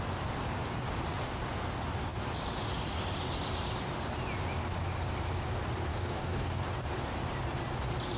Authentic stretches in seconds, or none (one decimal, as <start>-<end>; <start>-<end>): 0.0-5.9; 6.6-8.2